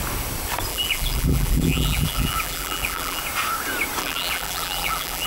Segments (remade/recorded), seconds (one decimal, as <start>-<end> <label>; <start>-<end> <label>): 0.0-0.7 recorded; 0.7-3.2 remade; 3.2-4.0 recorded; 4.0-5.3 remade